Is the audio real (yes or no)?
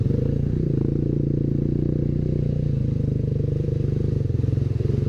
no